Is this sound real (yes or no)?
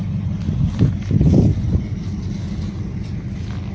yes